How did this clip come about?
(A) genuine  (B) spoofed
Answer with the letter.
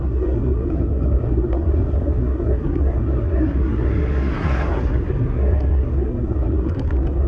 B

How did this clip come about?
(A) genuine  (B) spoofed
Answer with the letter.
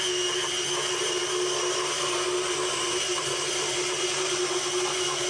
A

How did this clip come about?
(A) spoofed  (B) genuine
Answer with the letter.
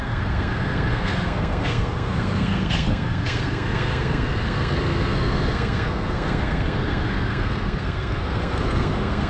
A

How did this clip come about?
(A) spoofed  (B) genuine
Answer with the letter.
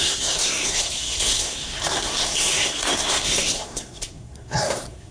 A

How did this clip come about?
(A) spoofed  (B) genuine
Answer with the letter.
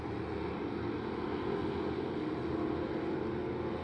B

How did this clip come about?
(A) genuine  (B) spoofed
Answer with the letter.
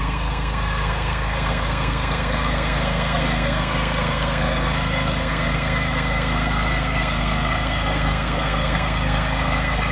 B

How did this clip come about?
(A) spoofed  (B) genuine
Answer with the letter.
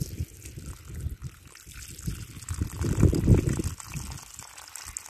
B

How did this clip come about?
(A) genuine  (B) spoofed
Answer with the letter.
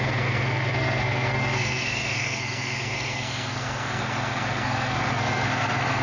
B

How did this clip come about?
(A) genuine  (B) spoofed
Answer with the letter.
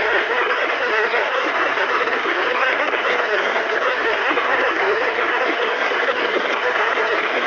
B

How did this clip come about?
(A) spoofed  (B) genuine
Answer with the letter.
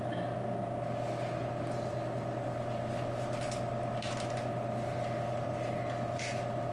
B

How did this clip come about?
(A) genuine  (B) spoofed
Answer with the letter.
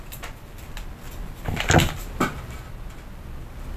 A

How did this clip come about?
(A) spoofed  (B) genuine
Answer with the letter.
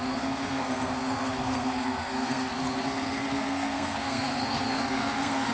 A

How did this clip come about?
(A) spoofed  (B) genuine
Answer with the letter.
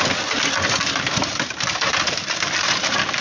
B